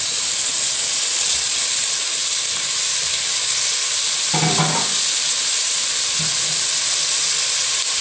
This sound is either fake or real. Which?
real